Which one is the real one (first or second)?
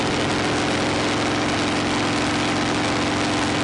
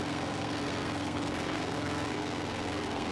first